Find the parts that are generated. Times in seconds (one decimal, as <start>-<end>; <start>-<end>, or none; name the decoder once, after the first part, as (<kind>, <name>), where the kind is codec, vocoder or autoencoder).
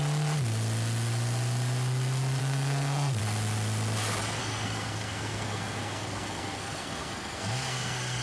2.4-3.2 (codec, SNAC); 4.4-8.2